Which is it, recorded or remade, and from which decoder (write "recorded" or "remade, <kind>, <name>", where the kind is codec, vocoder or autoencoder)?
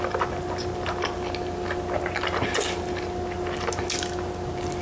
recorded